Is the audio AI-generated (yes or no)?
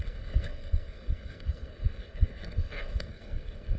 yes